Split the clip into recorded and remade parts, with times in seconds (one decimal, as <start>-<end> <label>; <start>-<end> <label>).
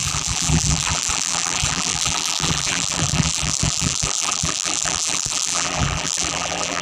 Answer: 0.0-6.8 remade